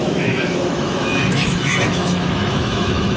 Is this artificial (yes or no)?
yes